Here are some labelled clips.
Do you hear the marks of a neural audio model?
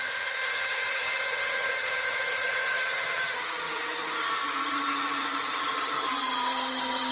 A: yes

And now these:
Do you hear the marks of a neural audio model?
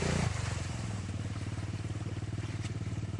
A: yes